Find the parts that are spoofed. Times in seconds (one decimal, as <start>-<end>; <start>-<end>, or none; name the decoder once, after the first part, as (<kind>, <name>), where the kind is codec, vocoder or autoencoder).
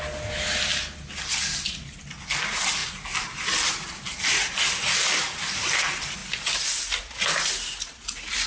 none